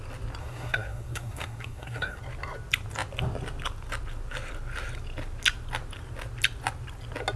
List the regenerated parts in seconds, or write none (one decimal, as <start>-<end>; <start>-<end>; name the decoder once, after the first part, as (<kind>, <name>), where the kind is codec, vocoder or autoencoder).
0.4-2.2 (codec, SNAC)